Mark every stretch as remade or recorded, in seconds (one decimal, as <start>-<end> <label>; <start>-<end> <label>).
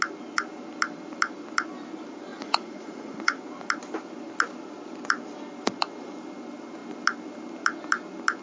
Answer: 0.0-2.3 recorded; 2.3-3.4 remade; 3.4-8.4 recorded